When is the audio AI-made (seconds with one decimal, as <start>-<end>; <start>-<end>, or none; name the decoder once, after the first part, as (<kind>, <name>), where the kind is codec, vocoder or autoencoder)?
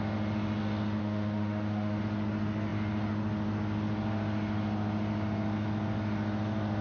1.0-2.0 (autoencoder, DAC-VAE)